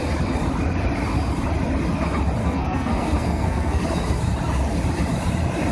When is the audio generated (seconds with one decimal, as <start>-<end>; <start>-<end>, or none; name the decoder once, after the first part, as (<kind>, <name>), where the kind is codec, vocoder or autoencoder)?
2.4-3.8 (codec, SNAC)

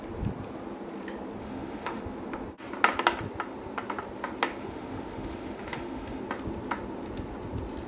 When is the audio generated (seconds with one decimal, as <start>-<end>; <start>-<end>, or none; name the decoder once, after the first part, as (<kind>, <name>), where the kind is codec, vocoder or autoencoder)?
1.4-2.0 (autoencoder, DAC-VAE); 4.6-6.2

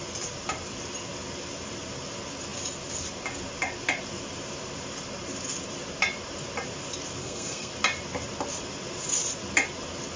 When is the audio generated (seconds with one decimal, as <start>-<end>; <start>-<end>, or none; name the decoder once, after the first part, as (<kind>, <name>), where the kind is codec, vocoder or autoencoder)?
7.2-7.7 (codec, SNAC)

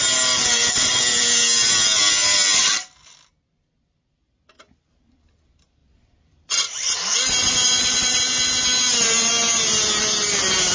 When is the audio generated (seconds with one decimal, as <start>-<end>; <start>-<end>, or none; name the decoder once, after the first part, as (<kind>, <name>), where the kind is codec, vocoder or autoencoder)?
5.8-8.2 (vocoder, BigVGAN v2)

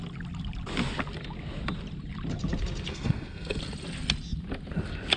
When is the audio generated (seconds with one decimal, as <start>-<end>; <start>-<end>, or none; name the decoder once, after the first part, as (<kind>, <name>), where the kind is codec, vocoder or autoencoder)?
2.9-3.6 (codec, SNAC)